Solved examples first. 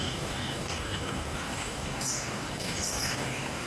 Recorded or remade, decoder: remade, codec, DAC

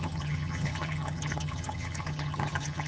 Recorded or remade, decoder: remade, vocoder, HiFi-GAN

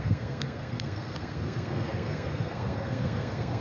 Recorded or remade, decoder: remade, codec, SNAC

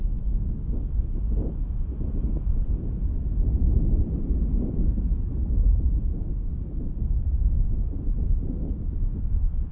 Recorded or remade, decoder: recorded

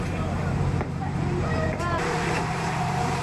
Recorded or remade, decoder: remade, vocoder, BigVGAN v2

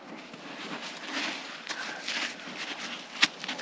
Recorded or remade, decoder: recorded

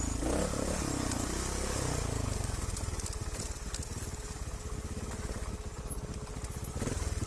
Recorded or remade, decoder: recorded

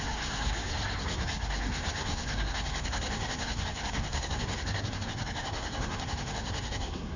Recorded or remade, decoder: remade, codec, SNAC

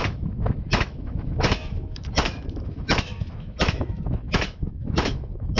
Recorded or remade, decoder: remade, autoencoder, DAC-VAE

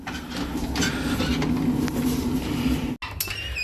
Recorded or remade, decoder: recorded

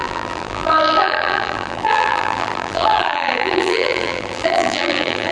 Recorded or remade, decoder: remade, vocoder, BigVGAN v2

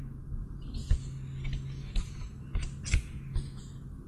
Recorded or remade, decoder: recorded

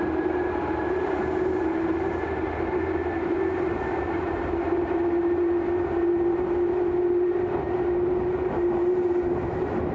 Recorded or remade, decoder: remade, vocoder, BigVGAN v2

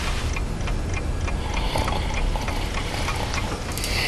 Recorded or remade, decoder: recorded